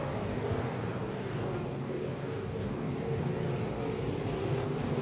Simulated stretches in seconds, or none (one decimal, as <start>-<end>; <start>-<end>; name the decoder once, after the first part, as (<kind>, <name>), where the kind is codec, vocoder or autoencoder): 0.0-3.3 (codec, DAC); 4.3-5.0